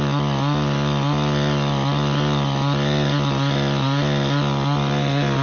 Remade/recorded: recorded